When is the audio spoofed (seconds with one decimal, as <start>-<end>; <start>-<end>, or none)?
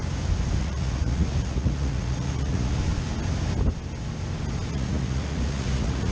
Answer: 0.6-2.8; 4.7-6.1